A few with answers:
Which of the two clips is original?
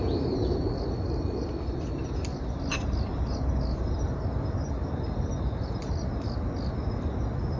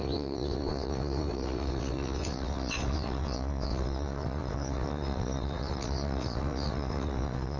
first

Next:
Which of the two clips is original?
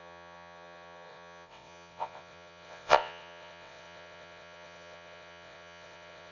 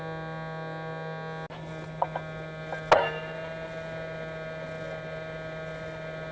second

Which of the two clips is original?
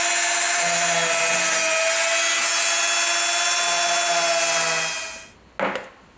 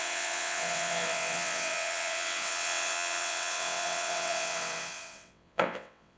first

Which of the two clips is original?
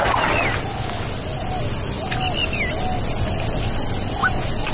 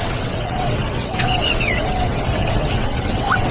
first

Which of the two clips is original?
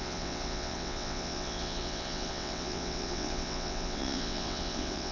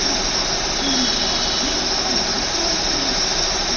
second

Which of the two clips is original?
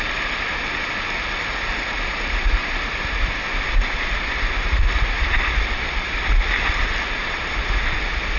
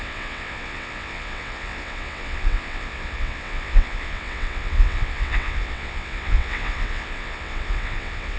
first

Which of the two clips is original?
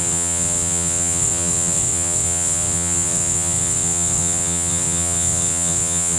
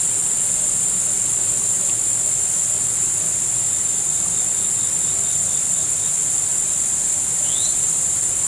second